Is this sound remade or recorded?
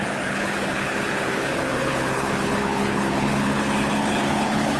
remade